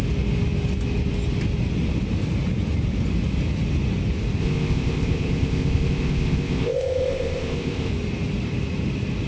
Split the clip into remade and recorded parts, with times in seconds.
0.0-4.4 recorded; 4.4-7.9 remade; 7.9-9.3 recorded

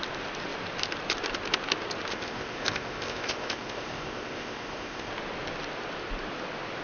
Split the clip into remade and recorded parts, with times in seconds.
0.0-2.1 recorded; 2.1-5.1 remade; 5.1-6.8 recorded

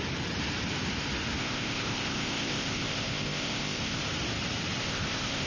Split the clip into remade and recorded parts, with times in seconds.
0.0-1.4 recorded; 1.4-4.0 remade; 4.0-4.8 recorded; 4.8-5.5 remade

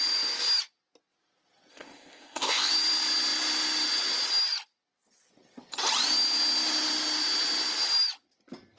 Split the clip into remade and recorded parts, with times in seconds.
0.0-1.7 recorded; 1.7-2.7 remade; 2.7-8.8 recorded

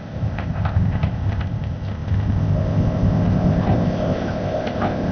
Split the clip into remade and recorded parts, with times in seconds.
0.0-5.1 remade

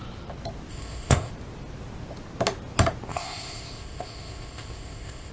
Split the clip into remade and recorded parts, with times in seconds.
0.0-0.7 recorded; 0.7-1.3 remade; 1.3-3.1 recorded; 3.1-5.3 remade

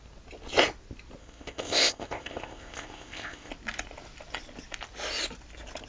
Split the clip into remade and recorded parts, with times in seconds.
0.0-1.2 recorded; 1.2-3.5 remade; 3.5-5.9 recorded